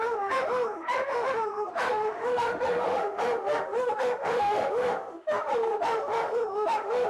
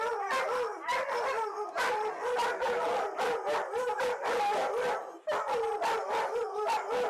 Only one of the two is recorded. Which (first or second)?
second